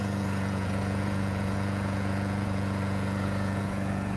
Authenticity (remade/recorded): remade